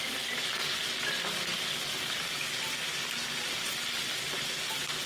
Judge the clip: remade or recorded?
recorded